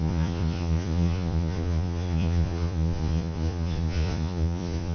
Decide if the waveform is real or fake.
fake